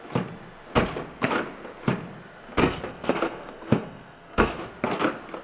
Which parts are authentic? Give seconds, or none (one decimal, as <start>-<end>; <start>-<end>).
0.0-2.6; 4.7-5.4